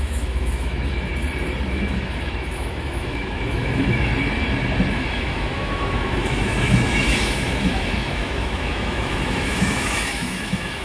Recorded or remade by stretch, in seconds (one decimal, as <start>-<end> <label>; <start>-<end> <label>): 0.0-1.1 remade; 1.1-1.7 recorded; 1.7-4.1 remade; 4.1-4.9 recorded; 4.9-10.8 remade